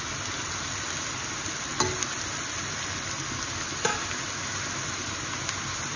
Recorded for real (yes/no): yes